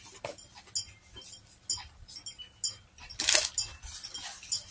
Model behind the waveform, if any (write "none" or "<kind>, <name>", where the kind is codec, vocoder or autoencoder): none